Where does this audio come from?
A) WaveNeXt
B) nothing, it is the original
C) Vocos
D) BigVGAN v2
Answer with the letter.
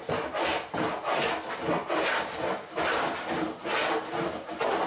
B